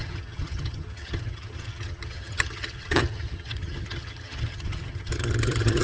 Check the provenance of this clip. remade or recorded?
remade